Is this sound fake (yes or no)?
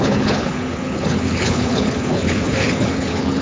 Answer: yes